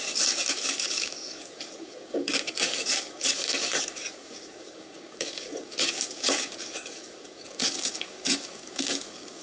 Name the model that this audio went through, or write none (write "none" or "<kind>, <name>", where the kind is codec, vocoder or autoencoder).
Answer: codec, DAC